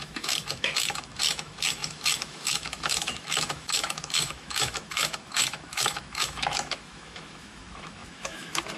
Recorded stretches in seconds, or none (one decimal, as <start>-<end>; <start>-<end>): none